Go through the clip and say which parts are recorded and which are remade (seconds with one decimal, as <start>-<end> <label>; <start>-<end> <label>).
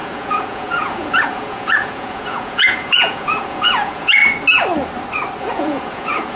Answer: 0.0-4.2 remade; 4.2-5.4 recorded; 5.4-6.4 remade